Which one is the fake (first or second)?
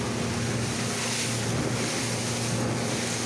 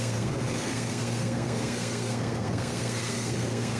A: second